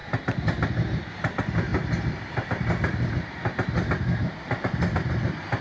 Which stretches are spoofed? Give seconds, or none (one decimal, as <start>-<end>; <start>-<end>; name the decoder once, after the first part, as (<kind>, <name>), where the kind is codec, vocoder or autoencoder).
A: none